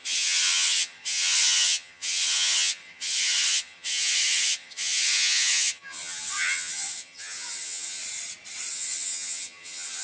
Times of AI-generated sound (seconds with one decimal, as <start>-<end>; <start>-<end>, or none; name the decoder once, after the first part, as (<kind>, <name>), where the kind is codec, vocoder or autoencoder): 0.0-8.0 (vocoder, HiFi-GAN); 8.7-10.0